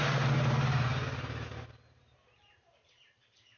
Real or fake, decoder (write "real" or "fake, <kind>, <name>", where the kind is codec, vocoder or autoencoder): fake, vocoder, BigVGAN v2